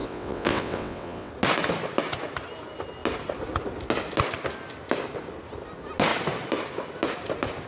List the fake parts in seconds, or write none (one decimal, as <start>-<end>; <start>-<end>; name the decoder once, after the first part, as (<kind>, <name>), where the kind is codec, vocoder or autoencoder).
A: 0.0-1.3 (vocoder, WaveNeXt)